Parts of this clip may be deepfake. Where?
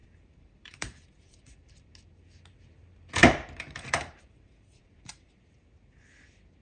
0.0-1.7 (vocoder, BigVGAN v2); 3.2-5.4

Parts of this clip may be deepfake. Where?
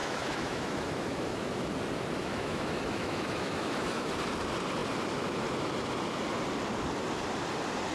0.0-1.7 (autoencoder, DAC-VAE); 2.2-4.1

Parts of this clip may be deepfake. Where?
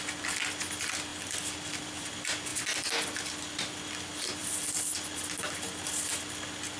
none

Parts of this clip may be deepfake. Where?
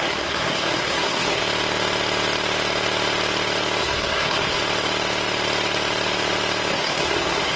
0.0-1.4 (codec, SNAC); 3.8-4.6; 6.7-7.6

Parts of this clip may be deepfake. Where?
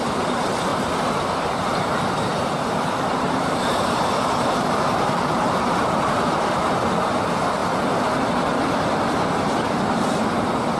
0.7-1.9 (vocoder, BigVGAN v2); 2.3-6.4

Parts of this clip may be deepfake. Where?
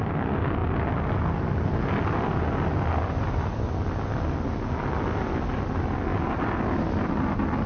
none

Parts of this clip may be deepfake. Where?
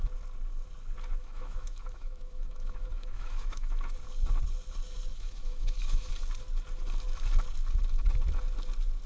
1.2-3.7 (autoencoder, DAC-VAE); 5.1-6.1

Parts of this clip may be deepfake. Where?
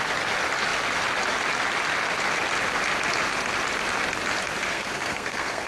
4.7-5.7 (codec, SNAC)